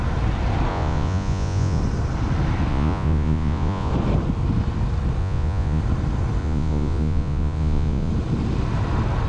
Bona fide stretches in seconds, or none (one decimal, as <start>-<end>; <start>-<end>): 0.0-0.7; 1.8-2.7; 3.9-5.2; 5.8-6.4; 8.1-9.3